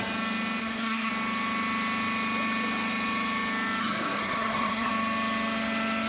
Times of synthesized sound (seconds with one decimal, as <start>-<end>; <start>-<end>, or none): 0.6-1.1; 3.8-4.9